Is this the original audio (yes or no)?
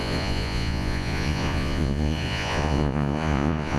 no